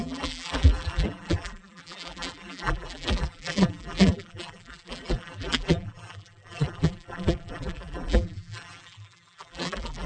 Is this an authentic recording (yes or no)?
no